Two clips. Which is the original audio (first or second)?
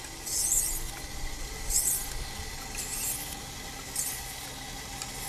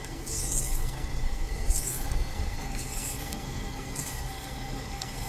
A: first